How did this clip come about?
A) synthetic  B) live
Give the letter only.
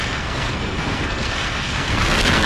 A